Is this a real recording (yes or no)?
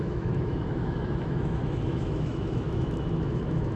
no